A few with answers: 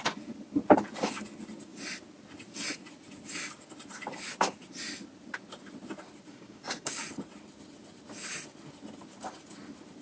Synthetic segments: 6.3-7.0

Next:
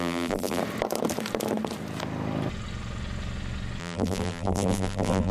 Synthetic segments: 0.0-0.6; 3.8-5.3

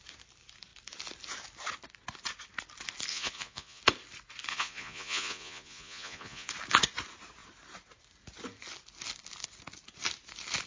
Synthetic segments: 3.1-3.8; 4.5-6.5

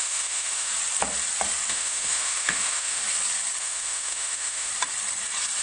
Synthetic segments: 0.0-0.7; 1.7-3.0; 3.6-4.7

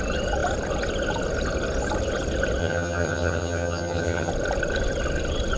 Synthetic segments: 2.6-4.3

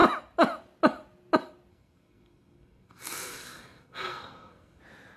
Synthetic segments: 1.7-4.8

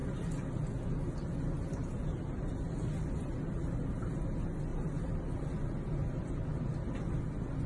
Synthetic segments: 1.8-2.5; 4.7-5.3

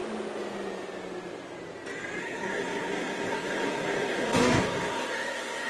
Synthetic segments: 2.2-5.7